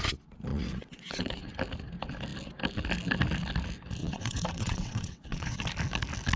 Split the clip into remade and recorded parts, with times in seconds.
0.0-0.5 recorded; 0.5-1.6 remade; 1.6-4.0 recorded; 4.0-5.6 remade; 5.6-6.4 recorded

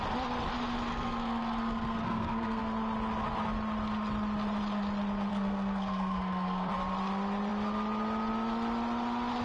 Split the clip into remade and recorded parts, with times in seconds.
0.0-0.9 recorded; 0.9-2.6 remade; 2.6-5.3 recorded; 5.3-6.7 remade; 6.7-9.4 recorded

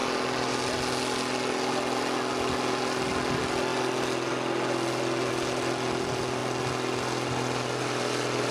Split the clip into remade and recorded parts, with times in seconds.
0.0-8.5 recorded

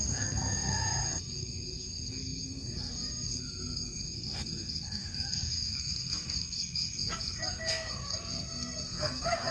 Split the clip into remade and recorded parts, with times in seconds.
0.0-9.5 remade

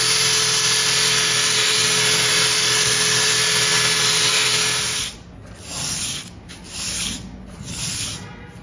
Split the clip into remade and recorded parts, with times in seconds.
0.0-8.6 recorded

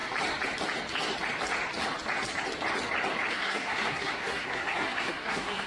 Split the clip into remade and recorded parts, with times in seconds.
0.0-3.3 recorded; 3.3-5.7 remade